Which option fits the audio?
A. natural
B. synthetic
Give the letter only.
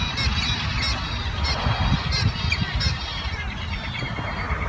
A